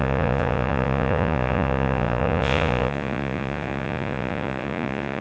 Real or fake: fake